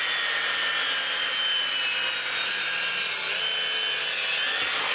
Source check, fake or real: real